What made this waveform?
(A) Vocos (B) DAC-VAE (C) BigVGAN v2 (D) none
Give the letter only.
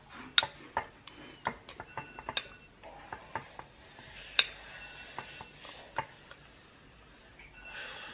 D